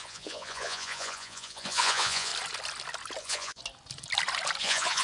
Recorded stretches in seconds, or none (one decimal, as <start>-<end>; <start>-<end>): 2.3-3.2; 3.6-4.6